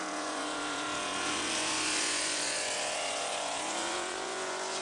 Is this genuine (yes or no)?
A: no